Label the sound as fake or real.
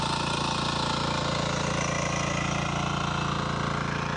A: real